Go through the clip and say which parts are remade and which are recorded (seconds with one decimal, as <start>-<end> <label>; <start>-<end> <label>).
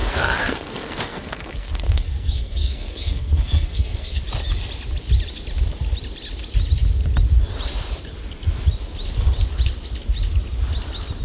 0.0-4.2 remade; 4.2-11.2 recorded